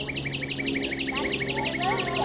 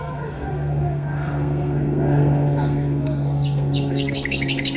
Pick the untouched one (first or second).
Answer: first